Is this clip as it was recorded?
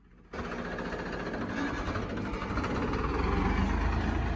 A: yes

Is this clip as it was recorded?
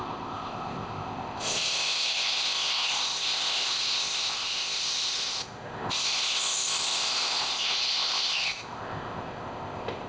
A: no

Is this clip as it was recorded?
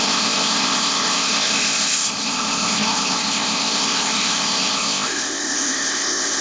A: no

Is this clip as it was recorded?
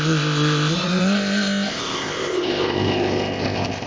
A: no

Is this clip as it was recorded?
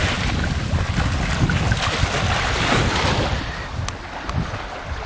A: yes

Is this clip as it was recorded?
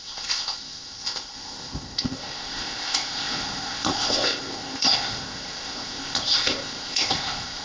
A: no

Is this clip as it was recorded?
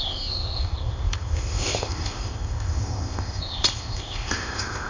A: no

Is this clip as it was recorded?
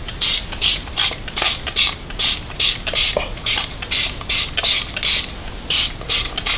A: yes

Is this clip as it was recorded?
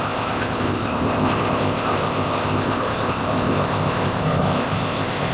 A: no